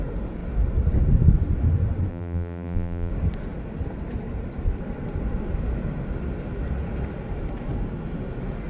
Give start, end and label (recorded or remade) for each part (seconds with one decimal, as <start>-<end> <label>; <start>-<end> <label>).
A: 0.0-2.1 recorded; 2.1-3.1 remade; 3.1-8.7 recorded